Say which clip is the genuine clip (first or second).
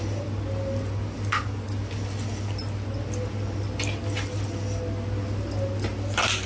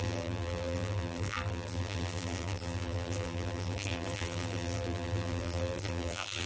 first